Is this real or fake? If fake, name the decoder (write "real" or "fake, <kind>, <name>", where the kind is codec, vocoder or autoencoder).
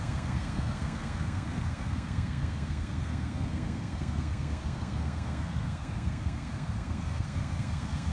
fake, codec, SNAC